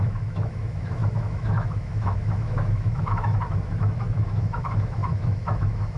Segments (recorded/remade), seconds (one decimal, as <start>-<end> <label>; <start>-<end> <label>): 0.0-6.0 remade